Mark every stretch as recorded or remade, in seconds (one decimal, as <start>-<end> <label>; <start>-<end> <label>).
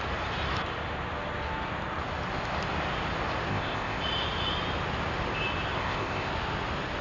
0.0-3.5 recorded; 3.5-4.0 remade; 4.0-5.8 recorded; 5.8-6.3 remade; 6.3-7.0 recorded